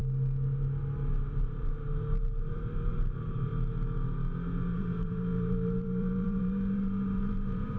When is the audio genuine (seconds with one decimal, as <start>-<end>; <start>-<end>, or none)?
0.0-1.2; 3.5-4.7